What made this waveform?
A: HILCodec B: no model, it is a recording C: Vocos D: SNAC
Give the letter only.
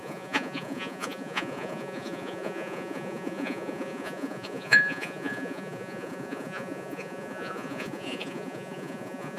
C